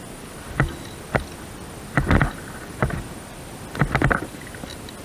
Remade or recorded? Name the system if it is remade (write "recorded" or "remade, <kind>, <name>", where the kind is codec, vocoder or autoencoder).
recorded